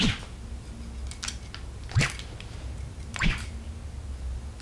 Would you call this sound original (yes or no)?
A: yes